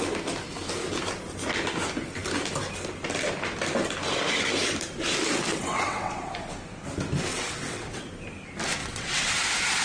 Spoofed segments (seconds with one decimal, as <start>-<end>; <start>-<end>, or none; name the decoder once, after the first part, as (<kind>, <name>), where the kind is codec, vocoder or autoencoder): 5.5-6.3 (vocoder, WaveNeXt); 7.3-8.1; 8.8-9.3